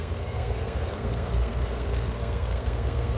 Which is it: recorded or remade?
remade